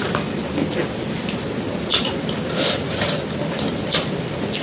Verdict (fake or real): real